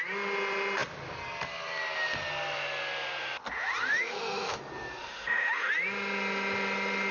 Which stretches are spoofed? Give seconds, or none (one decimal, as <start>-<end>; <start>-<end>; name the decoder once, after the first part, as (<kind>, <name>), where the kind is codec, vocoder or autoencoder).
3.9-4.6 (autoencoder, DAC-VAE); 5.0-5.7